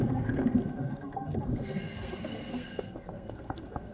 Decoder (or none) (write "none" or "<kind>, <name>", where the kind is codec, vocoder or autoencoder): codec, SNAC